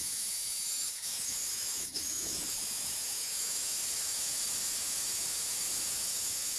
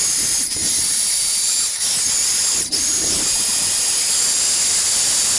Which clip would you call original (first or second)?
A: second